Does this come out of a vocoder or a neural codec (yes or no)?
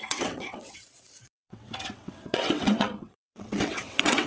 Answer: yes